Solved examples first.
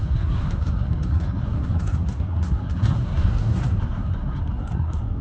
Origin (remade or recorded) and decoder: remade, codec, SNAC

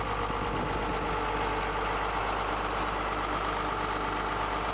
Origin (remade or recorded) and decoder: recorded